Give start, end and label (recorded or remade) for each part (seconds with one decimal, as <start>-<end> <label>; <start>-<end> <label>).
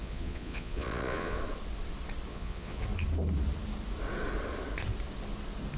0.0-1.4 remade; 1.4-2.3 recorded; 2.3-2.8 remade; 2.8-5.8 recorded